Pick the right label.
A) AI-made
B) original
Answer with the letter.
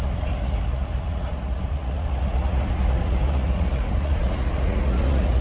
A